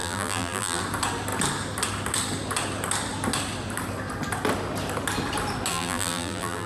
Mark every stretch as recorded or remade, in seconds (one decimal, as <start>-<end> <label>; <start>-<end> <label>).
0.0-0.8 remade; 0.8-5.7 recorded; 5.7-6.7 remade